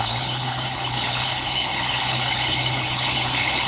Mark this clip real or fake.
fake